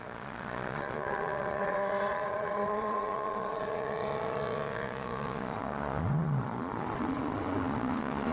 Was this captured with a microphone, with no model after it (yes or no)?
no